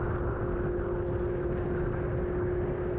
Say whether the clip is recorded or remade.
recorded